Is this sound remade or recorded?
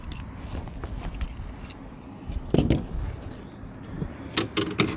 recorded